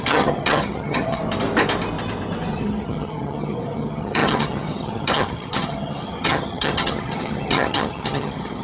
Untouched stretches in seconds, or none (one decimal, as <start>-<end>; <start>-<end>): 1.2-2.5